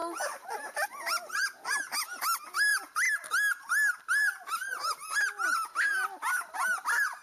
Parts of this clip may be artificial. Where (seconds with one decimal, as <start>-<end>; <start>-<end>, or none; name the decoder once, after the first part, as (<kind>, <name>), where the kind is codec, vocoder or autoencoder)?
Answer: none